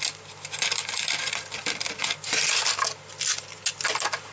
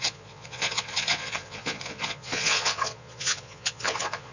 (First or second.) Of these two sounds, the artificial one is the second